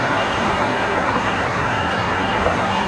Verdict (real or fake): fake